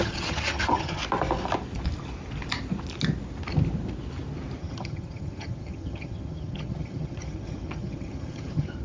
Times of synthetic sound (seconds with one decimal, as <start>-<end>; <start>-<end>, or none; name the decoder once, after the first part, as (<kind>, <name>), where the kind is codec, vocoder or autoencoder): 0.0-1.0 (vocoder, HiFi-GAN); 4.6-8.8